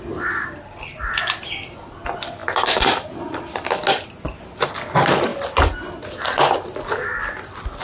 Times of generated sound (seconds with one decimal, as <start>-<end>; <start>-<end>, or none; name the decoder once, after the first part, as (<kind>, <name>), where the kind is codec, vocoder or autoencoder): none